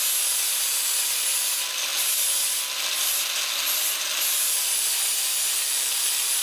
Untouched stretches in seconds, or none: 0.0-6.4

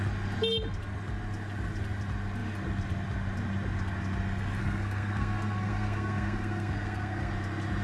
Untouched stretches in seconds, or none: 0.0-4.6; 7.3-7.8

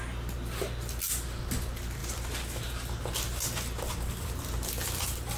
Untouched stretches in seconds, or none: 0.0-5.4

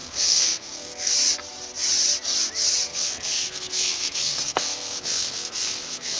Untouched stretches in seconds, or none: 1.1-2.9